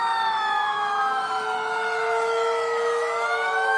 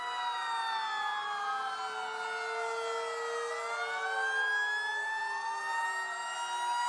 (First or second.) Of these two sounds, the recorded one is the second